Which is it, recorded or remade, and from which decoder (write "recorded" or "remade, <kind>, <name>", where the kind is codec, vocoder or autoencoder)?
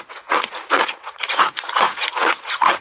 remade, vocoder, Vocos